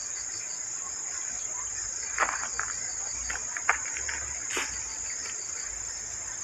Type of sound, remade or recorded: recorded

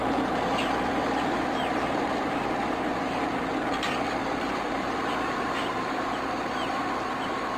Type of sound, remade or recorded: remade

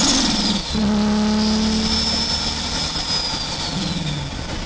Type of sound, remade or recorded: recorded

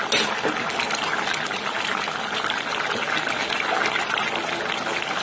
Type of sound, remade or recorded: recorded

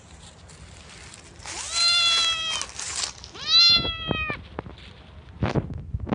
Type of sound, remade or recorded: recorded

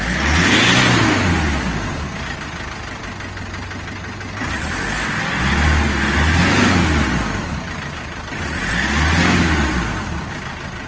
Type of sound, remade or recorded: recorded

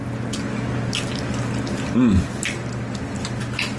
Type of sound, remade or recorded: recorded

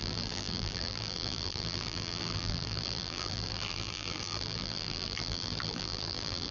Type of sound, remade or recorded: remade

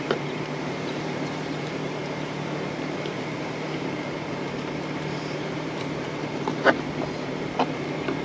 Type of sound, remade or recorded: remade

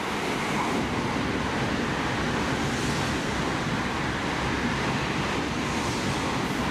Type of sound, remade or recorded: recorded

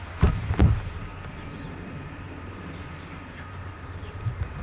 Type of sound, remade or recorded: remade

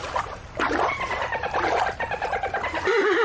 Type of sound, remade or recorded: remade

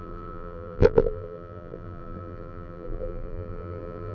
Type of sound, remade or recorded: remade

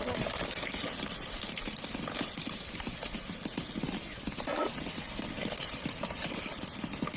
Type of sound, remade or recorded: remade